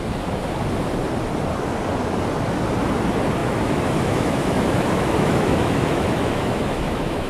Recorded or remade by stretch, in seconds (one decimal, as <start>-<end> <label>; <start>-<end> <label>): 0.0-3.4 recorded; 3.4-7.3 remade